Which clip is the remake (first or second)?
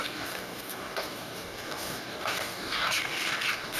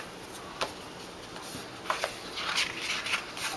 first